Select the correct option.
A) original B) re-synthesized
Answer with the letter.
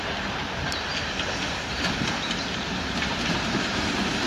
B